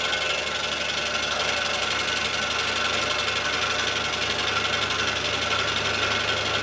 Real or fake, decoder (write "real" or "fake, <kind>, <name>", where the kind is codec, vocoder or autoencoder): real